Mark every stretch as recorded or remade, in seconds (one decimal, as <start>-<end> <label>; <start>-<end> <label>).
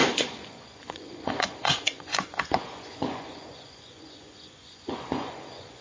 0.0-5.8 remade